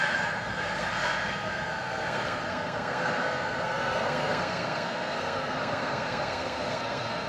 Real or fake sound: fake